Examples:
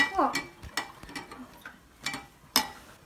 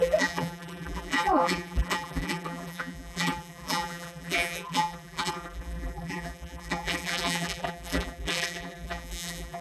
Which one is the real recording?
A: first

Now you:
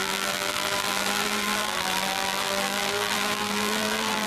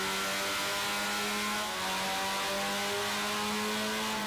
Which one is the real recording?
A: second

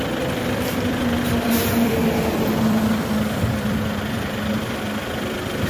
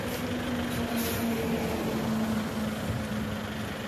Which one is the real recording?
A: second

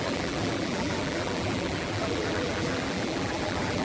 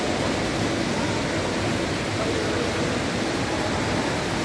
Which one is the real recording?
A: second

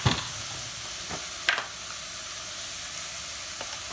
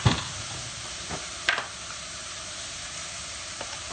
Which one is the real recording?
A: first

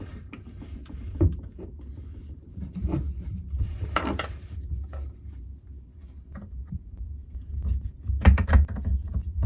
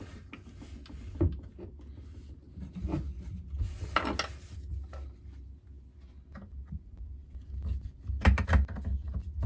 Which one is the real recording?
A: second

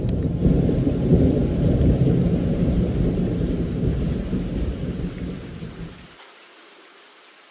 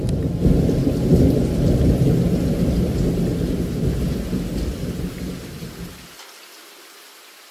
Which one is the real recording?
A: second